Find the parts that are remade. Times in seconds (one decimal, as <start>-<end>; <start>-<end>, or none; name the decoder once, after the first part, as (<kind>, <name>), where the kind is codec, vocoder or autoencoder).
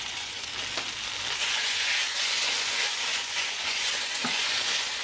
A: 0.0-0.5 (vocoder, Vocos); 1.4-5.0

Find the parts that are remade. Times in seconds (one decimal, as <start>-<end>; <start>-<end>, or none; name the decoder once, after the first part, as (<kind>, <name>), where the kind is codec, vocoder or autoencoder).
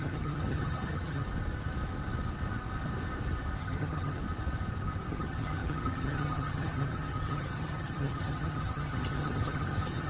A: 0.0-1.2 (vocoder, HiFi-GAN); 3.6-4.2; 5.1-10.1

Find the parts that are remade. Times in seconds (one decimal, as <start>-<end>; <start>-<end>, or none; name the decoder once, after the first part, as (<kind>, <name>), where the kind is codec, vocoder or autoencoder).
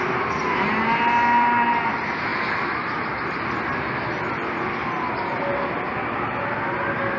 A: none